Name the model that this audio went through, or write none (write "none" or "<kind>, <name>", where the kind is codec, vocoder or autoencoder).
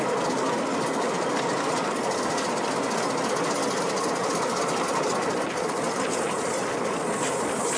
none